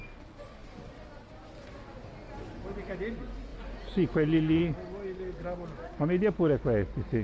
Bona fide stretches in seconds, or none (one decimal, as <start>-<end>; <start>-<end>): 0.0-0.6; 1.1-7.2